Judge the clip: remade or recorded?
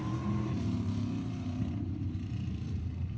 remade